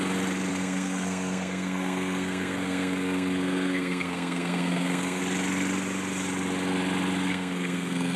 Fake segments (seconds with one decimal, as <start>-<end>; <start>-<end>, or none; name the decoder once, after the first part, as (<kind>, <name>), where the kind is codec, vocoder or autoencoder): 0.5-5.2 (codec, SNAC); 7.3-8.2